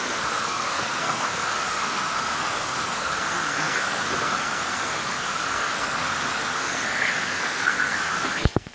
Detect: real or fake fake